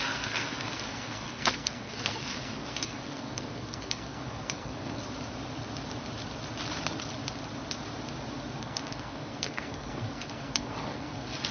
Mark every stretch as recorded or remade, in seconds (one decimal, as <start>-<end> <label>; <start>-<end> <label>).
0.0-5.0 remade; 5.0-8.6 recorded; 8.6-11.5 remade